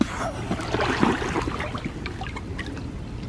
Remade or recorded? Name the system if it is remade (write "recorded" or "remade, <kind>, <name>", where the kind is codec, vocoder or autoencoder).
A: recorded